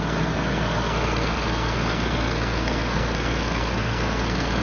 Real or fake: fake